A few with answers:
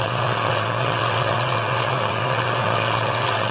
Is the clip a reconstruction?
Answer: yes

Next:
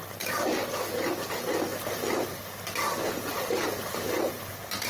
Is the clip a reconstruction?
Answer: no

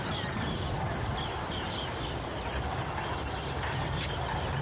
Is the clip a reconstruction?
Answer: no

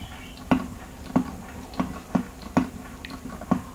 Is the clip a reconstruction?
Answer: no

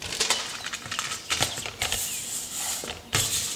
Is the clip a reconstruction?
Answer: no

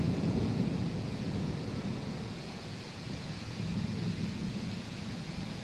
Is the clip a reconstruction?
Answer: yes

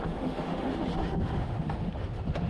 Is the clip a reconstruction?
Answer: yes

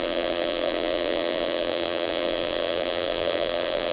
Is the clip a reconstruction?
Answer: yes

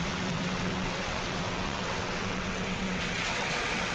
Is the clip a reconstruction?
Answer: yes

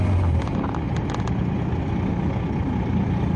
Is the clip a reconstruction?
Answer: no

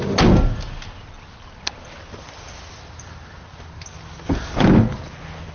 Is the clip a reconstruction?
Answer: no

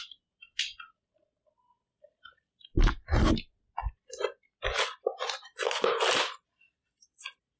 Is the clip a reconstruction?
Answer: no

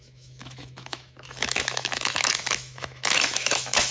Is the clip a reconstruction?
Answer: yes